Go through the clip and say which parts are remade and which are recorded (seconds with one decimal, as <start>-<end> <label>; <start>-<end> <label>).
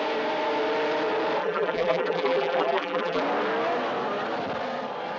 0.0-1.4 recorded; 1.4-3.2 remade; 3.2-5.2 recorded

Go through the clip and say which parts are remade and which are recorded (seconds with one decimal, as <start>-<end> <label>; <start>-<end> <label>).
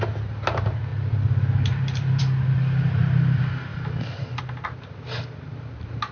0.0-0.9 recorded; 0.9-2.2 remade; 2.2-3.7 recorded; 3.7-4.4 remade; 4.4-6.1 recorded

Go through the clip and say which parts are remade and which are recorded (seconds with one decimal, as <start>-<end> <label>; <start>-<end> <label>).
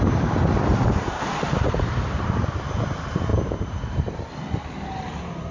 0.0-0.7 recorded; 0.7-2.3 remade; 2.3-3.3 recorded; 3.3-4.3 remade; 4.3-5.5 recorded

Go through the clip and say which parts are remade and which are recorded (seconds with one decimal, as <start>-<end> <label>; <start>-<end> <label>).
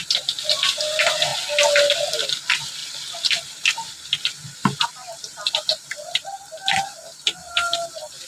0.0-1.3 remade; 1.3-2.1 recorded; 2.1-8.3 remade